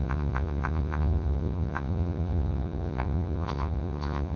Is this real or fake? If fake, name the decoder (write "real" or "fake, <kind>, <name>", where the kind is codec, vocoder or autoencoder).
fake, vocoder, Vocos